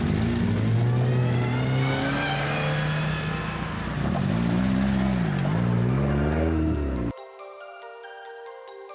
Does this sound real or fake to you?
real